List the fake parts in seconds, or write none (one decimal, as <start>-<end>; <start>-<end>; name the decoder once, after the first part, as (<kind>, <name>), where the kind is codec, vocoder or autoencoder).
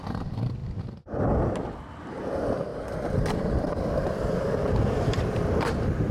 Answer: 0.0-0.6 (vocoder, BigVGAN v2); 1.9-6.1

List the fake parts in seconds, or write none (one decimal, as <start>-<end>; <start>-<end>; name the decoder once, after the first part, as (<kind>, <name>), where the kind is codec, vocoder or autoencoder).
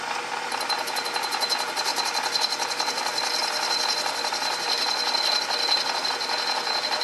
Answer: 1.9-6.1 (vocoder, BigVGAN v2)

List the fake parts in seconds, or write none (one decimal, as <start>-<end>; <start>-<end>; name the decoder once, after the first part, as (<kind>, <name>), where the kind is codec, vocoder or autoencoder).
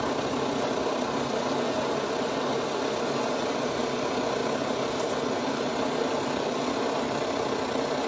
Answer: 4.4-7.3 (vocoder, BigVGAN v2)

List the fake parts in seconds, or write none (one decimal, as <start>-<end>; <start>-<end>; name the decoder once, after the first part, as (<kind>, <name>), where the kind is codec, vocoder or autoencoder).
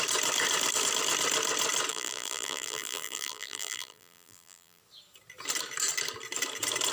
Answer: 1.9-4.8 (vocoder, BigVGAN v2)